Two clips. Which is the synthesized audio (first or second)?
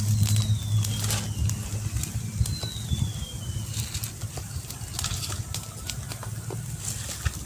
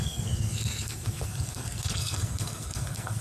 second